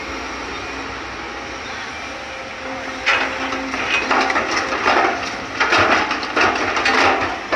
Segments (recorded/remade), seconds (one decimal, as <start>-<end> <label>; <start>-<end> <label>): 0.0-7.6 recorded

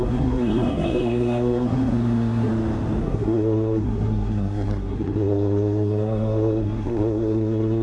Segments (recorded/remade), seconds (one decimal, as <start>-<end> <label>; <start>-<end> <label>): 0.0-2.5 remade; 2.5-3.0 recorded; 3.0-7.8 remade

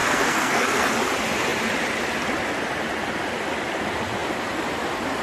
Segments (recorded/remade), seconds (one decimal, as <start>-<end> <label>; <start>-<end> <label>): 0.0-0.9 remade; 0.9-5.2 recorded

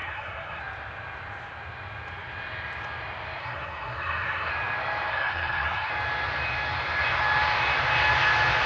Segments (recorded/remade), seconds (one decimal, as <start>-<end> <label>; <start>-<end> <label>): 0.0-0.6 remade; 0.6-3.4 recorded; 3.4-4.5 remade; 4.5-5.1 recorded; 5.1-5.9 remade; 5.9-8.7 recorded

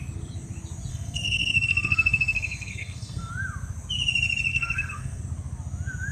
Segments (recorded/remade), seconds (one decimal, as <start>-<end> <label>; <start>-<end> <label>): 0.0-0.9 recorded; 0.9-3.3 remade; 3.3-4.5 recorded; 4.5-5.2 remade; 5.2-6.1 recorded

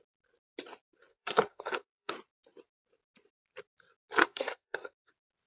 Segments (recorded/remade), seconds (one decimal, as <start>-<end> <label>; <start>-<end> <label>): 0.0-1.1 recorded; 1.1-2.1 remade; 2.1-4.2 recorded; 4.2-5.1 remade; 5.1-5.5 recorded

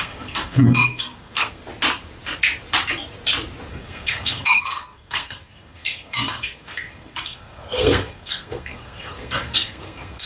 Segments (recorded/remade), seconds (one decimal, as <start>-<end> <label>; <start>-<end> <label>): 0.0-1.6 remade; 1.6-3.7 recorded; 3.7-10.3 remade

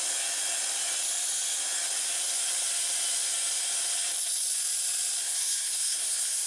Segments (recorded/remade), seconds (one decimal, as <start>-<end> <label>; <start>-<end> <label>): 0.0-5.2 recorded; 5.2-6.5 remade